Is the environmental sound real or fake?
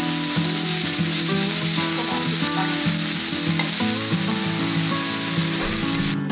real